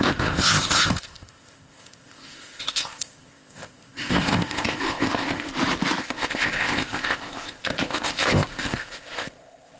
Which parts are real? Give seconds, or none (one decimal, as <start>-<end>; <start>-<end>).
5.5-6.0